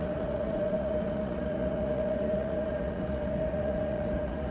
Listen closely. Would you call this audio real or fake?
fake